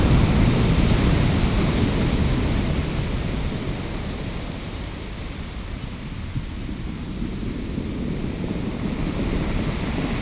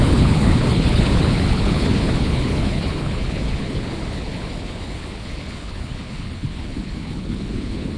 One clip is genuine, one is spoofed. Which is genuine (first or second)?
first